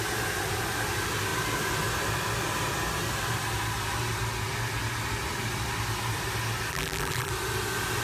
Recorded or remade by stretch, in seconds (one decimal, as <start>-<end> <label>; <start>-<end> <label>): 0.0-6.7 recorded; 6.7-7.3 remade; 7.3-8.0 recorded